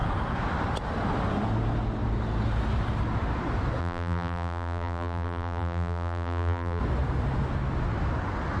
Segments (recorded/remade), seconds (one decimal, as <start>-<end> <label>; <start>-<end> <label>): 0.0-3.8 recorded; 3.8-6.8 remade; 6.8-8.6 recorded